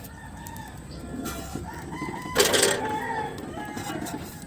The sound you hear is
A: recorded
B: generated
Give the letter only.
A